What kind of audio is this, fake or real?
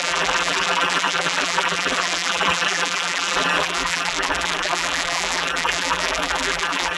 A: fake